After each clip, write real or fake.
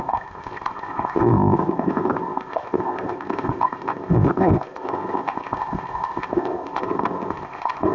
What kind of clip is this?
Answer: fake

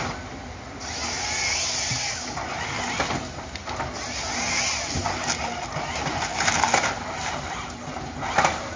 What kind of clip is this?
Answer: real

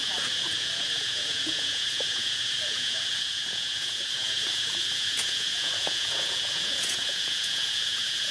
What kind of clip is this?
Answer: fake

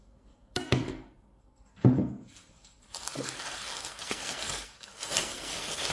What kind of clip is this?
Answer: fake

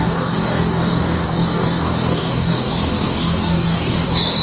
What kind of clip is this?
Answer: fake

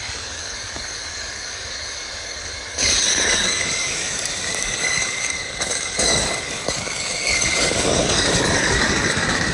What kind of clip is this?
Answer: fake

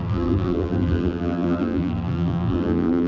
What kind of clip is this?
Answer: fake